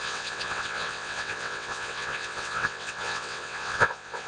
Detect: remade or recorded remade